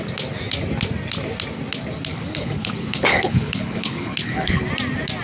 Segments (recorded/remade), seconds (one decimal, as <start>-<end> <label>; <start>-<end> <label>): 0.0-2.1 recorded; 2.1-4.6 remade; 4.6-5.2 recorded